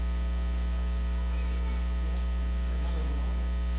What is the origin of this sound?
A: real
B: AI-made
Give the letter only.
A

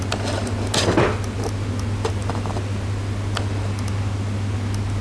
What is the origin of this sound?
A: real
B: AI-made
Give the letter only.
A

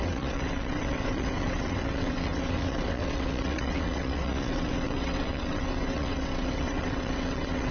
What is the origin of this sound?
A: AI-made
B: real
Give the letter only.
A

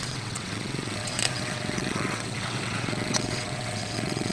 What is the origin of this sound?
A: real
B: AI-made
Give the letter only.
B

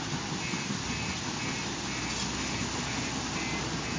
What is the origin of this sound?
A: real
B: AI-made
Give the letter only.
A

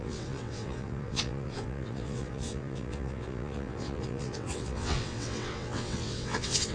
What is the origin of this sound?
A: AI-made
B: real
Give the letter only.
A